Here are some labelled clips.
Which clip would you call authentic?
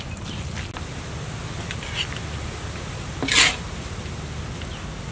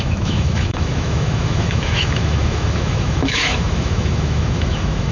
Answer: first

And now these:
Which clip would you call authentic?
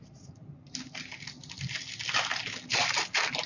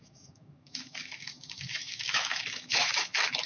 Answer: first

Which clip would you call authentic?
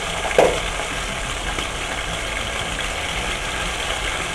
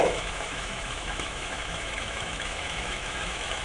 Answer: first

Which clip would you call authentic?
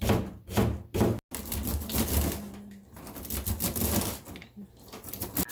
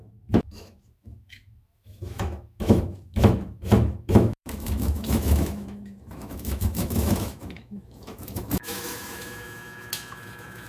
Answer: first